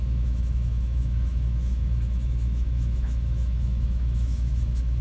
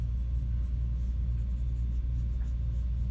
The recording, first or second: second